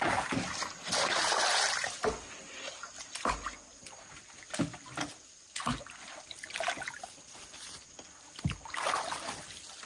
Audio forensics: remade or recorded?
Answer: recorded